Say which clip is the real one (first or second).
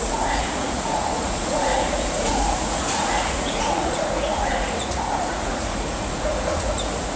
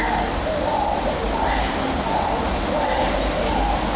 second